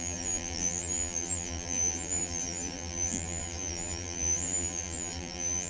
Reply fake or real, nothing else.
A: fake